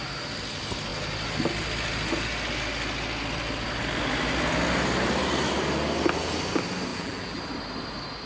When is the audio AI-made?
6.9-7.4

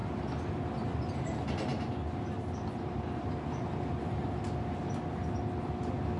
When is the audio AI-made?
none

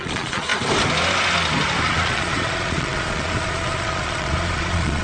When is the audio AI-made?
0.0-0.5; 1.8-5.0

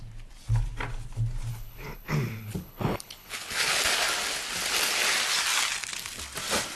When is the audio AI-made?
1.5-3.8